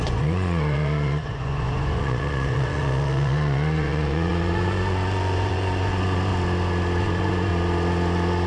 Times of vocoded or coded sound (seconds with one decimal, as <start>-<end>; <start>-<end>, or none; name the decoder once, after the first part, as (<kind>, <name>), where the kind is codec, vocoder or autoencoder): 0.0-6.3 (vocoder, Vocos); 7.0-7.5